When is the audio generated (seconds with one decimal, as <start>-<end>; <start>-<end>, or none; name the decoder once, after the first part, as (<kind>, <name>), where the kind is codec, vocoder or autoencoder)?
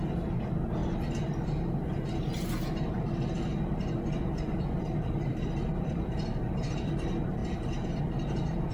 0.0-0.8 (vocoder, BigVGAN v2); 4.3-7.4; 8.0-8.7